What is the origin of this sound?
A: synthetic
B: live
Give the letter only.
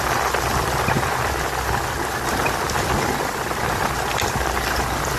B